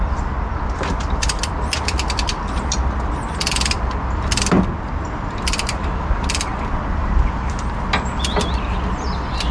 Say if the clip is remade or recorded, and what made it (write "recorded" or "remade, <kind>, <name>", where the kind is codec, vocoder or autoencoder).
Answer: recorded